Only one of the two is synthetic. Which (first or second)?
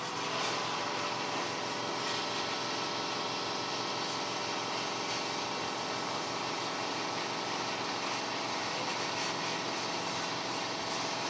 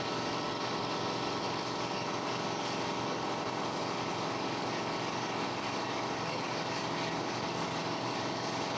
second